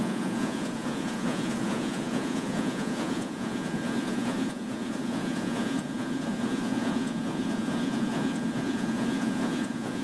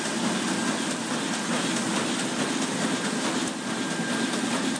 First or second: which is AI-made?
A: first